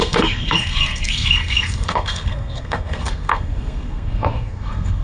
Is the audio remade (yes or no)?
yes